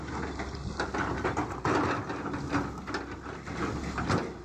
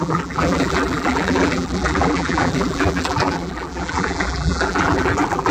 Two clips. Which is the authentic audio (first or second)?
first